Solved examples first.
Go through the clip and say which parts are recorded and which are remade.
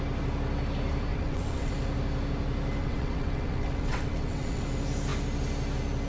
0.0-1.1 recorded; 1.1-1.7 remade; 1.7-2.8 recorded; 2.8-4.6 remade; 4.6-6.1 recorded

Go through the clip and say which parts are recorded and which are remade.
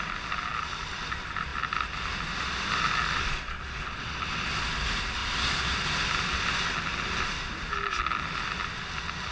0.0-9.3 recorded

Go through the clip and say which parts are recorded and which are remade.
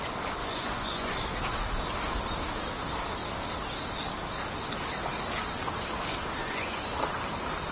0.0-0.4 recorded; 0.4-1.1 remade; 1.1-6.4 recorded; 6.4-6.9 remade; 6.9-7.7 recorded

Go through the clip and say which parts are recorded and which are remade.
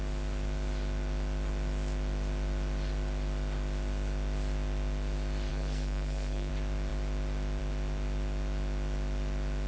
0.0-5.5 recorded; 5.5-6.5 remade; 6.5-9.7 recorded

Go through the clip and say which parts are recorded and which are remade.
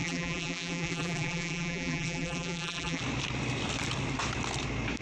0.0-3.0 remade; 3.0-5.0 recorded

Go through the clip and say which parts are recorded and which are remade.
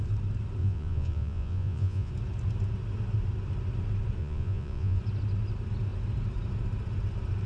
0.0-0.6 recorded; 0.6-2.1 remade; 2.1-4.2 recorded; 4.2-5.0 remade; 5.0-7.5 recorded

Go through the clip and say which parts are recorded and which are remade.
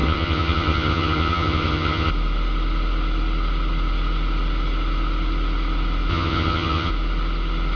0.0-2.1 remade; 2.1-6.1 recorded; 6.1-6.9 remade; 6.9-7.8 recorded